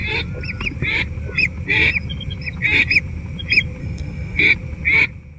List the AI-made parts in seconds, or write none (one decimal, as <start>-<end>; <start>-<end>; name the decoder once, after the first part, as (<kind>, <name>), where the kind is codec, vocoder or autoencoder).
3.8-4.4 (codec, SNAC)